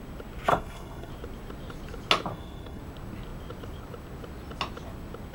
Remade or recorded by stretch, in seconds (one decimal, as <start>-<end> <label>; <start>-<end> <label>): 0.0-0.5 recorded; 0.5-1.1 remade; 1.1-2.3 recorded; 2.3-2.8 remade; 2.8-5.3 recorded